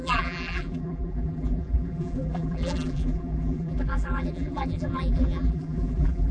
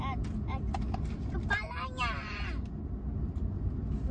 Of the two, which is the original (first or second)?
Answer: second